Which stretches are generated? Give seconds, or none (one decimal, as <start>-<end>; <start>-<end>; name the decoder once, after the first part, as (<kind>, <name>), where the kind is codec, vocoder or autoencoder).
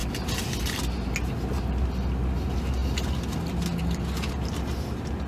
none